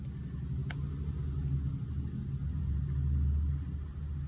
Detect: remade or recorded recorded